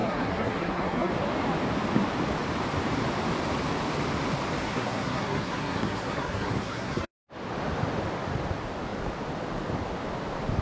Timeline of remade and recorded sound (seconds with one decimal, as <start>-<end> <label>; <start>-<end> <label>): 0.0-1.1 remade; 1.1-4.6 recorded; 4.6-7.1 remade; 7.1-10.6 recorded